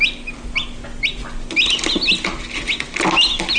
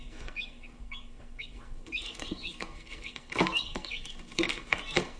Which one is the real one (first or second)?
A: first